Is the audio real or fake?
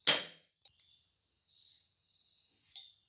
real